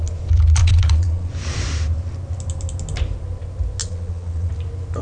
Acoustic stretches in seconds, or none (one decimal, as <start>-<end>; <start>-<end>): 0.0-0.6; 1.3-3.8; 4.5-5.0